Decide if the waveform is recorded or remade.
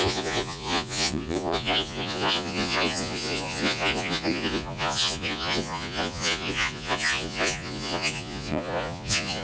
remade